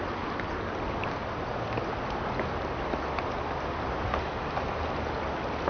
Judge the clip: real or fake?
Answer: real